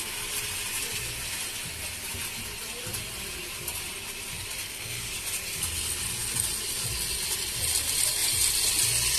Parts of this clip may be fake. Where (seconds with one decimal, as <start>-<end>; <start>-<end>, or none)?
4.6-5.1

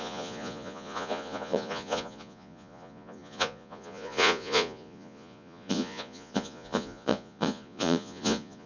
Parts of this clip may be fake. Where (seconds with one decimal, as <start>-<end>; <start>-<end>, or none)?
0.0-8.7

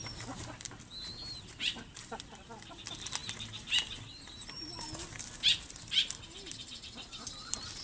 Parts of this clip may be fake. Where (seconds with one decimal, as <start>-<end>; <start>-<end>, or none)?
none

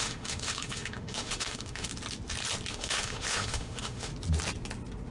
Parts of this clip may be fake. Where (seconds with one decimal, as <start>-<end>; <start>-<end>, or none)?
0.0-1.9; 2.7-4.1

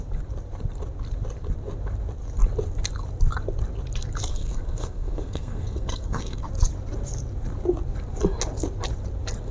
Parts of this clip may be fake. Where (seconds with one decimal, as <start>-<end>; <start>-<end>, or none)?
4.3-6.4